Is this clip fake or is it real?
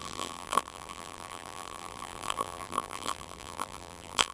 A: fake